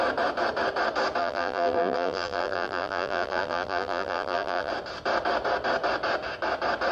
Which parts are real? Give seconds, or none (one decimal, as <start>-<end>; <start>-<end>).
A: 0.0-1.2; 4.7-6.9